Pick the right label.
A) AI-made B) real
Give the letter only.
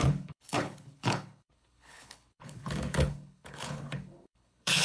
A